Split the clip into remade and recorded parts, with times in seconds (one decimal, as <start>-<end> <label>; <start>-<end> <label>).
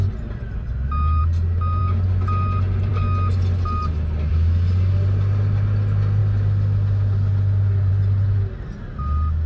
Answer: 0.0-9.5 recorded